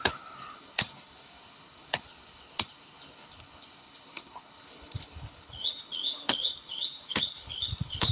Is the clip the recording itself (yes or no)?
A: no